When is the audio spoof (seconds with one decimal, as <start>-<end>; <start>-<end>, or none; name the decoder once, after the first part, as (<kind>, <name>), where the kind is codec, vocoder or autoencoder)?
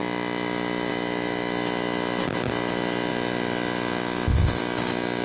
none